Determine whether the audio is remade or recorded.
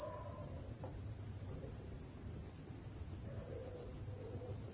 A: remade